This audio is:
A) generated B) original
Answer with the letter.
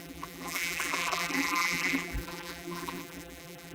A